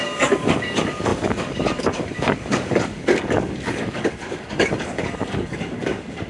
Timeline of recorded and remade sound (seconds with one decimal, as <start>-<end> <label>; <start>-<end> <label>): 0.0-6.3 remade